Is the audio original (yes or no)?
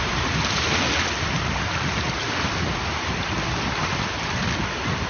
yes